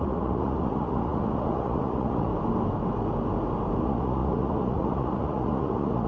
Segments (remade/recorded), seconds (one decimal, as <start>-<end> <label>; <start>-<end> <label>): 0.0-2.3 remade; 2.3-3.8 recorded; 3.8-6.1 remade